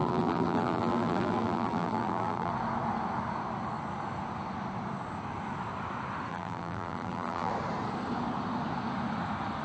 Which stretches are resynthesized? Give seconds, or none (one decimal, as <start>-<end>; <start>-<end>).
0.0-2.5; 6.3-7.5